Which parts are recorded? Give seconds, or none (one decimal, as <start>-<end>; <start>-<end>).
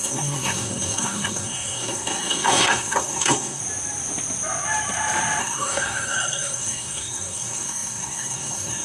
3.6-5.4